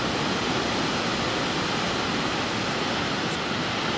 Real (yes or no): yes